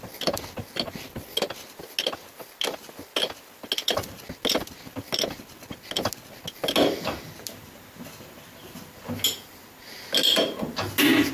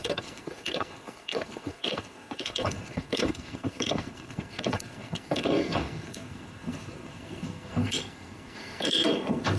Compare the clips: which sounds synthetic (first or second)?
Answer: second